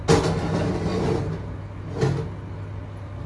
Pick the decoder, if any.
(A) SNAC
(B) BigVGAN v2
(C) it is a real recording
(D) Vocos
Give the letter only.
C